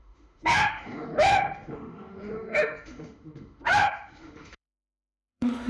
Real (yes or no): no